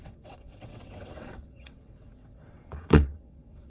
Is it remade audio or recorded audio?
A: remade